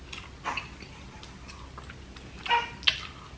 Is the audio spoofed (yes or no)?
no